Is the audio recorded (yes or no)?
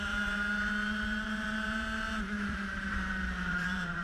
no